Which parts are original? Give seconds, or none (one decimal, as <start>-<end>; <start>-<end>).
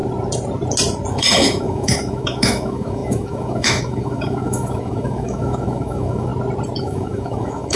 0.0-1.1; 6.3-6.8